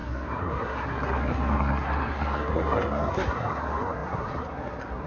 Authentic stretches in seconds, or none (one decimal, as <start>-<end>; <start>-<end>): none